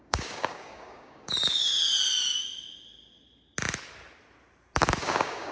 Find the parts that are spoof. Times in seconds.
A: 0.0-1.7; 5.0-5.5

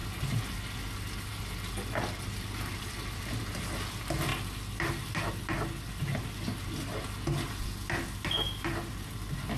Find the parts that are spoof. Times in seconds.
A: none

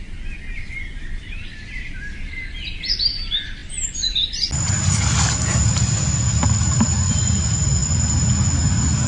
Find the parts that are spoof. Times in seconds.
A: none

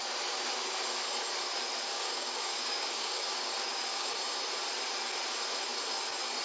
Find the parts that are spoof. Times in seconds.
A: 1.9-4.1

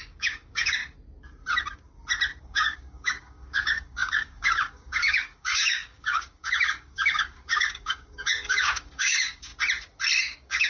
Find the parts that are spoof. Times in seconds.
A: 0.0-0.8; 2.4-9.5; 10.2-10.7

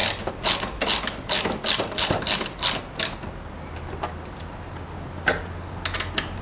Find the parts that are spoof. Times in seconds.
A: none